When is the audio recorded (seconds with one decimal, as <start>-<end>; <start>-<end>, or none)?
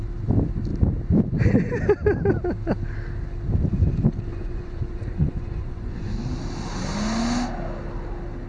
0.0-4.3; 6.1-8.5